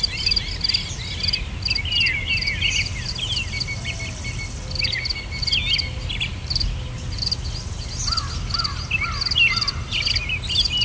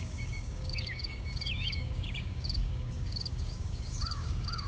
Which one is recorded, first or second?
first